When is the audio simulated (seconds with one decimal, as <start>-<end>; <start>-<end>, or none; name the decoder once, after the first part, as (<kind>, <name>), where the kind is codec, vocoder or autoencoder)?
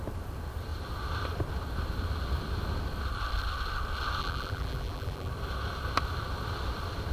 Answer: 4.2-5.3 (vocoder, BigVGAN v2)